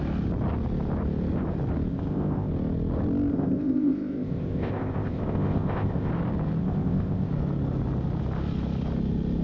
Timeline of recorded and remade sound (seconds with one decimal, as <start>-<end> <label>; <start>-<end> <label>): 0.0-1.9 recorded; 1.9-2.5 remade; 2.5-3.3 recorded; 3.3-6.1 remade; 6.1-6.6 recorded; 6.6-7.3 remade; 7.3-9.4 recorded